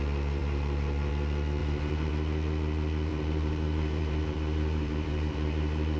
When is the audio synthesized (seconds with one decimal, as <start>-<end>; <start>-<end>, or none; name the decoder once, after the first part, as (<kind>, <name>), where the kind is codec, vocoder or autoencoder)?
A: 0.4-1.1 (vocoder, BigVGAN v2); 1.6-2.1; 3.1-6.0